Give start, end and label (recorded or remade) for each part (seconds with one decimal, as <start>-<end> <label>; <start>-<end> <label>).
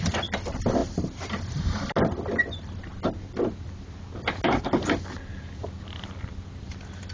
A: 0.0-7.1 recorded